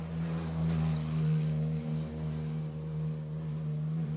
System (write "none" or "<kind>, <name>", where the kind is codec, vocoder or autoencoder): none